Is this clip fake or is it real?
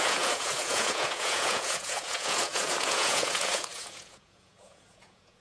fake